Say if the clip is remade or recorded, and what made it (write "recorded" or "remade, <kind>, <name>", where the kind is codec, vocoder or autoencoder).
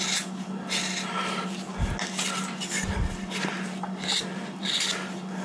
recorded